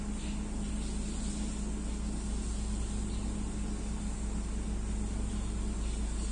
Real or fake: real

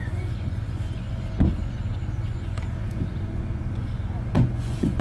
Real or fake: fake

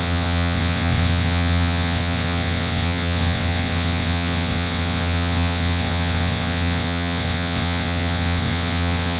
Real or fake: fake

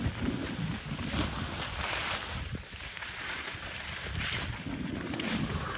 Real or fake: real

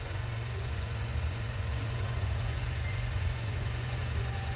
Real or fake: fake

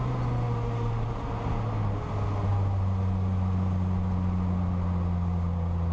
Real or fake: real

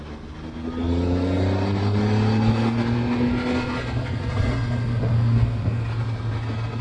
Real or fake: real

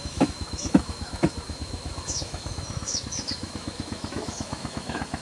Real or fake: fake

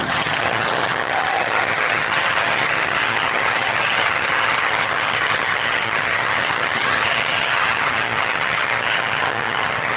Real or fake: fake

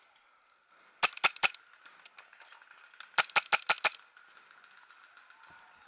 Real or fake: real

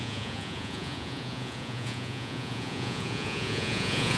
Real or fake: fake